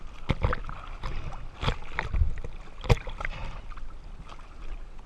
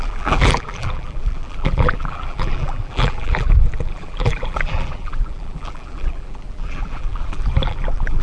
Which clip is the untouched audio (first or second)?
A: first